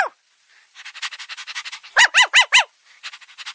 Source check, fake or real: real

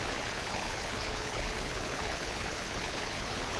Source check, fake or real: fake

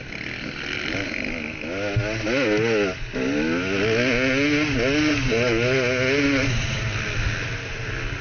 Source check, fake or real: real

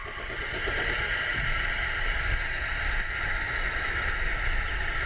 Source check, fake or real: real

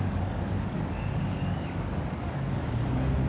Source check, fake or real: fake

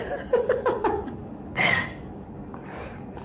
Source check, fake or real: fake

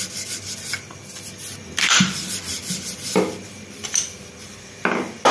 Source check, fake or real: fake